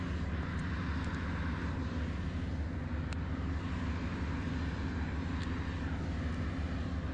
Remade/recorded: recorded